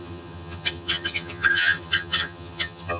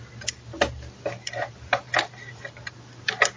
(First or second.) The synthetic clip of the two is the first